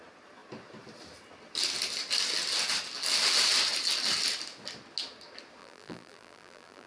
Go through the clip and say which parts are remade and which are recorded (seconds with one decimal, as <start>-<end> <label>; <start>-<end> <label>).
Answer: 0.0-5.6 recorded; 5.6-6.9 remade